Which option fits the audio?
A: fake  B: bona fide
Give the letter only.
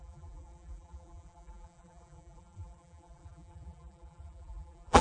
A